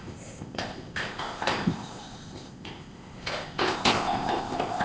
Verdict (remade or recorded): remade